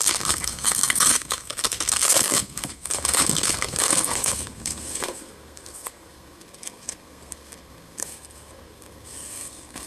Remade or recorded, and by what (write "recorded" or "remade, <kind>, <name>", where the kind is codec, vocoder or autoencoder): remade, codec, SNAC